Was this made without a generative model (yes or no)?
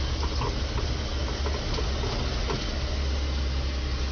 yes